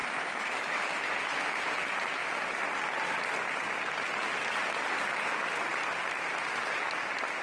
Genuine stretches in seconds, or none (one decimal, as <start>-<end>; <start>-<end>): 1.6-7.4